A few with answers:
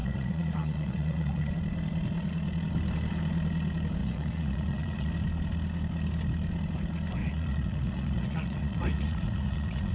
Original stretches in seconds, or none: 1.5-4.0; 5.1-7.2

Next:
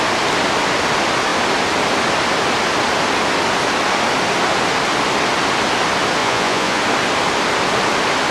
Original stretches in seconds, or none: 0.0-6.2; 6.8-8.3

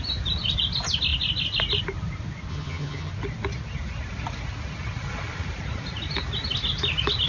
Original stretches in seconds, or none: 0.0-2.5; 3.1-7.3

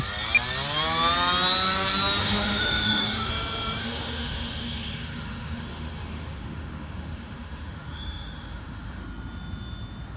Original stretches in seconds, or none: 0.0-2.2; 3.3-3.8; 9.0-10.2

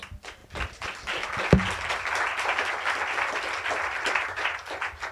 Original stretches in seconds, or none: 0.0-5.1